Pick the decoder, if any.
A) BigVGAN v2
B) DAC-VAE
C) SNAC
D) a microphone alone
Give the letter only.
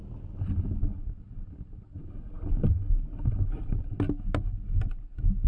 D